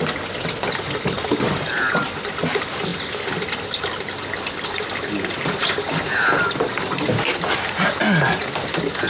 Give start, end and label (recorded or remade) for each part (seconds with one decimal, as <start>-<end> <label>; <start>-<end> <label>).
0.0-9.1 recorded